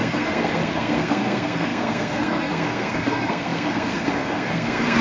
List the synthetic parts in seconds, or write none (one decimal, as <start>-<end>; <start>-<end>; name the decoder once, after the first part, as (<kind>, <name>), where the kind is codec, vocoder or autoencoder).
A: 0.0-5.0 (codec, SNAC)